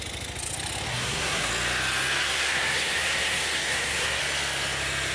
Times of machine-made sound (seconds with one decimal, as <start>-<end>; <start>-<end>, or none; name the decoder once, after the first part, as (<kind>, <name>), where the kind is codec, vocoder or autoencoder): 0.9-1.5 (codec, SNAC); 2.2-4.2